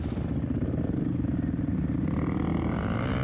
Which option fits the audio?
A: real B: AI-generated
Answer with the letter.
A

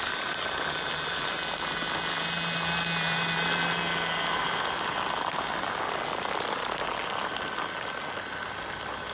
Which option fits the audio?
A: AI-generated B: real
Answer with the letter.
B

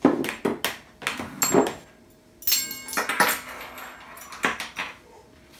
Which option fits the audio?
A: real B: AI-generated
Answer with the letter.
A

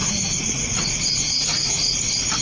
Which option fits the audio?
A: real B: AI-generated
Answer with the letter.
B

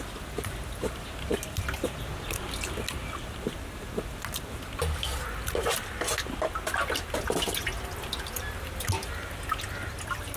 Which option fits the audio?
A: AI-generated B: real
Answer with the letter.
B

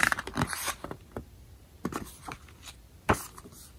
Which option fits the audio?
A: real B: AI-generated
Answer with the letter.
A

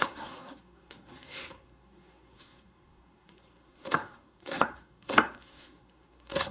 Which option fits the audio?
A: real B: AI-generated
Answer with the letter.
B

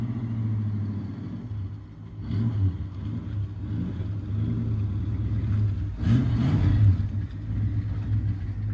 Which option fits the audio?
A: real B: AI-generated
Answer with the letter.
A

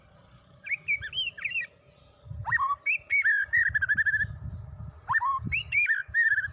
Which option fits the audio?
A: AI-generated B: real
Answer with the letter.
B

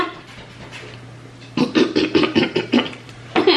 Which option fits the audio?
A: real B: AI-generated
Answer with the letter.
B